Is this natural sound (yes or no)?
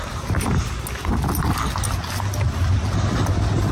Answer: yes